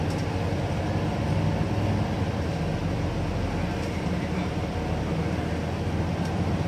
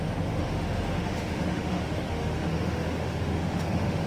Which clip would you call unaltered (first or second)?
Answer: first